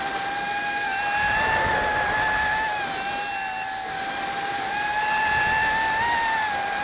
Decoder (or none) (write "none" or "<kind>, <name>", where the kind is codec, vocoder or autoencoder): none